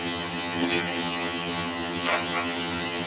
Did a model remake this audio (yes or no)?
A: yes